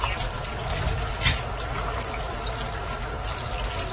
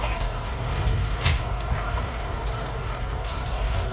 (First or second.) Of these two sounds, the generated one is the second